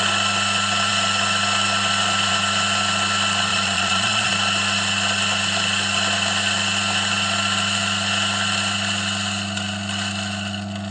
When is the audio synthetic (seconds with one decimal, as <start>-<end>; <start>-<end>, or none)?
3.5-4.3